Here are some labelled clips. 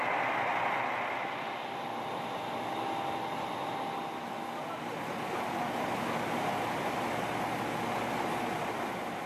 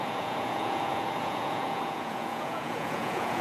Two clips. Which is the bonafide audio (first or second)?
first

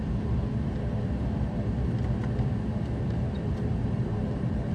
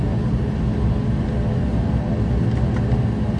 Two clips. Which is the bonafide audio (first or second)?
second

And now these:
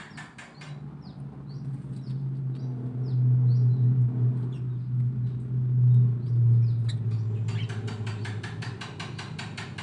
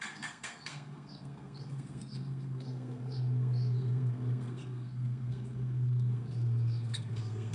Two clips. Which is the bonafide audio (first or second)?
first